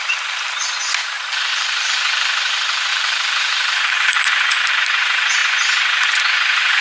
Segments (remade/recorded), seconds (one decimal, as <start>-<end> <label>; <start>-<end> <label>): 0.0-1.0 recorded; 1.0-1.9 remade; 1.9-2.9 recorded; 2.9-4.7 remade; 4.7-6.8 recorded